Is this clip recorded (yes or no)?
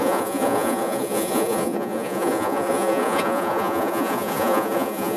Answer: no